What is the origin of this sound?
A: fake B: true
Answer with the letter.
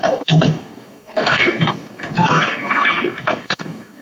A